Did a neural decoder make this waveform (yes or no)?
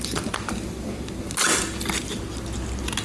no